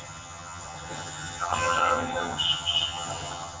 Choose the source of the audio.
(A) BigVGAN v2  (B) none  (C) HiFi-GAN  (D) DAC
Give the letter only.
C